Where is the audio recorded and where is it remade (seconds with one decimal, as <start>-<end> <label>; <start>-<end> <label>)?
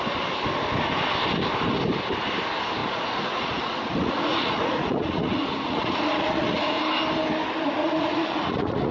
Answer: 0.0-2.8 recorded; 2.8-6.8 remade; 6.8-7.8 recorded; 7.8-8.9 remade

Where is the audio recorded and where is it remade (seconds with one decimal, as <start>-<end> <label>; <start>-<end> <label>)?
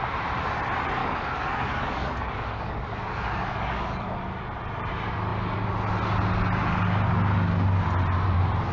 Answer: 0.0-1.0 recorded; 1.0-4.2 remade; 4.2-8.7 recorded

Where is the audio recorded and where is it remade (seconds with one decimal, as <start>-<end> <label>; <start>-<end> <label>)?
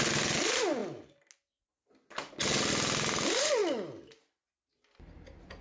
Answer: 0.0-5.6 recorded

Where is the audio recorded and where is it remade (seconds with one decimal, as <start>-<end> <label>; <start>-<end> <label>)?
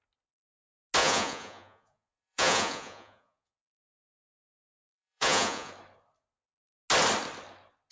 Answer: 0.0-1.0 recorded; 1.0-5.7 remade; 5.7-7.9 recorded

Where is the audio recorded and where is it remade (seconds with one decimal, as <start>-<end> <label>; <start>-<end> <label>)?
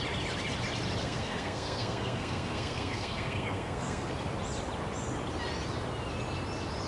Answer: 0.0-1.0 recorded; 1.0-4.1 remade; 4.1-6.9 recorded